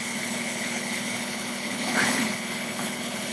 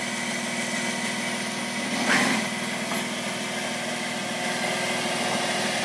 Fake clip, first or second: first